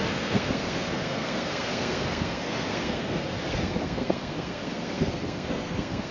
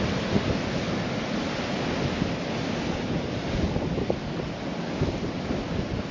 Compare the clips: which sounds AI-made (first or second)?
first